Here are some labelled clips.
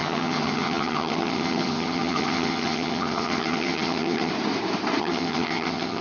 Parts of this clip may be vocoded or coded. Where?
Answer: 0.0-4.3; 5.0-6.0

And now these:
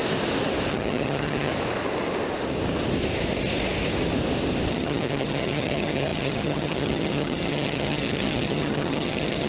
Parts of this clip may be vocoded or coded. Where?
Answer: 0.7-1.5; 4.7-9.5